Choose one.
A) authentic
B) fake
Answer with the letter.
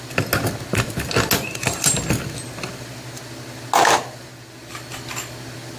A